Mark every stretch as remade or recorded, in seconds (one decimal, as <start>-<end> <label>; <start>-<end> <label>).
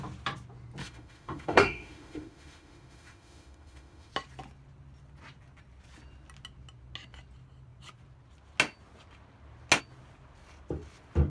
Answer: 0.0-0.8 recorded; 0.8-4.1 remade; 4.1-11.3 recorded